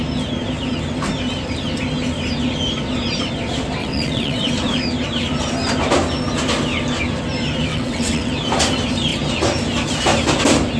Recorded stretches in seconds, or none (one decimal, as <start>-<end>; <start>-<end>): 0.0-3.8; 4.5-7.7; 8.3-10.8